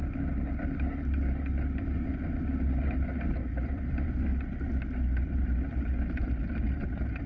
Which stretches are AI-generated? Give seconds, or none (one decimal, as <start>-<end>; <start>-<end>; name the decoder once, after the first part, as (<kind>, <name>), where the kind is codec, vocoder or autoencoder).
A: none